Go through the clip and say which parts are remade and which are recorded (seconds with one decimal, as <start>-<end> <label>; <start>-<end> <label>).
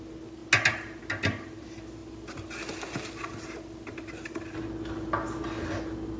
0.0-6.2 recorded